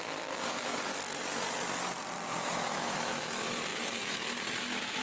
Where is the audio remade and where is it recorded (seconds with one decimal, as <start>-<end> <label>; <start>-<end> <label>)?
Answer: 0.0-0.7 remade; 0.7-2.4 recorded; 2.4-5.0 remade